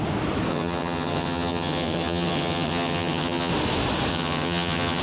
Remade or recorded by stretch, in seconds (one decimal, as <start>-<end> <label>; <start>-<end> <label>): 0.0-0.5 recorded; 0.5-3.5 remade; 3.5-4.1 recorded; 4.1-5.0 remade